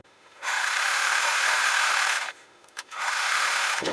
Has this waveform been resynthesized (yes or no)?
yes